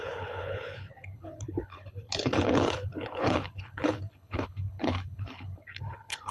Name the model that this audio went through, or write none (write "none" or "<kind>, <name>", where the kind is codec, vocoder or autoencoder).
codec, HILCodec